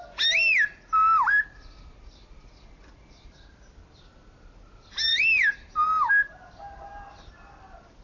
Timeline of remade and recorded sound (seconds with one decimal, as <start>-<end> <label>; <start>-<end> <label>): 0.0-8.0 recorded